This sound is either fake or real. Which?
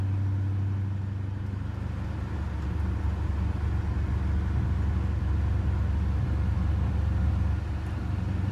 real